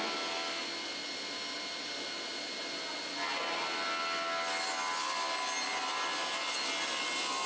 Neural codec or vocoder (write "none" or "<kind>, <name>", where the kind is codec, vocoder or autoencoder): none